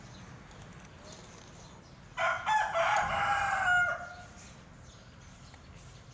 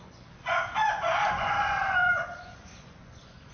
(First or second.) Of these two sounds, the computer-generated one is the second